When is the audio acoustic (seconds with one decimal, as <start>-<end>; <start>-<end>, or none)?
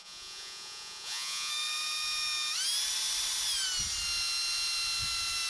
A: 1.5-5.5